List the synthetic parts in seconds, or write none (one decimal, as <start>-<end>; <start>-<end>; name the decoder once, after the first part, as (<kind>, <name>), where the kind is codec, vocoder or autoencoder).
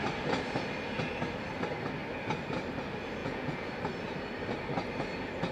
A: 3.2-3.7 (vocoder, Vocos)